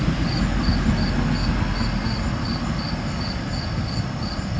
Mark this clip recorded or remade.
recorded